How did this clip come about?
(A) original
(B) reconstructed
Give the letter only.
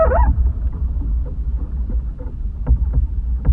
B